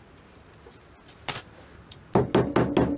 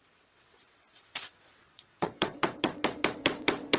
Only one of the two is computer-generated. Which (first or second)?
second